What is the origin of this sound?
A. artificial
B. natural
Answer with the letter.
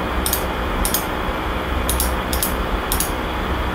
B